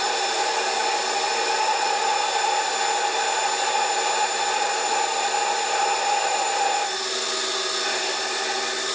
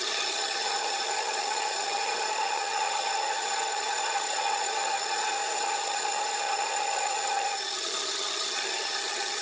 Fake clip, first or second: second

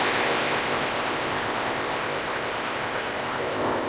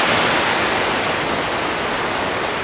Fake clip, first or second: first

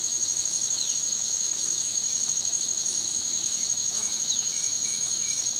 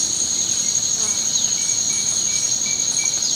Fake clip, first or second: first